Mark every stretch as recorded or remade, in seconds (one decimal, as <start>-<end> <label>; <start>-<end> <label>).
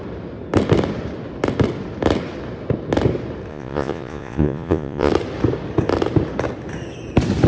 0.0-3.5 recorded; 3.5-5.1 remade; 5.1-7.5 recorded